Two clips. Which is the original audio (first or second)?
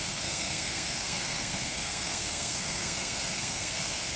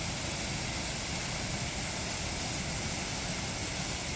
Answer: second